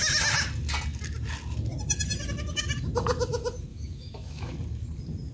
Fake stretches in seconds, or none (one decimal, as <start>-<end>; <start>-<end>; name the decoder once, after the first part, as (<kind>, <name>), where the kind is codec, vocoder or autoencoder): 3.7-4.5 (autoencoder, DAC-VAE)